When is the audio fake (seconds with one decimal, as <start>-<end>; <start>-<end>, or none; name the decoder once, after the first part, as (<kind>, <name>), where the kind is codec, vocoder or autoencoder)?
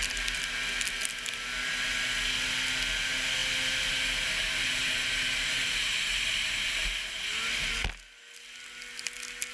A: none